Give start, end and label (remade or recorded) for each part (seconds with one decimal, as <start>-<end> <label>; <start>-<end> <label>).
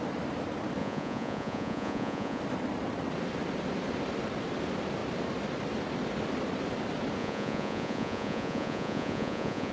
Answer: 0.0-0.8 recorded; 0.8-2.4 remade; 2.4-7.2 recorded; 7.2-9.7 remade